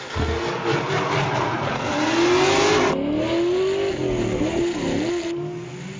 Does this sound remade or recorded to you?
recorded